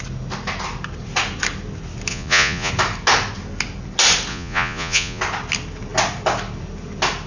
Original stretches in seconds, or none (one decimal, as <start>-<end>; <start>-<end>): 0.0-2.1; 2.7-4.3; 5.2-7.3